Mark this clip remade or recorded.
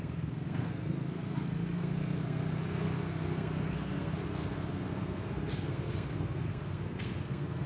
remade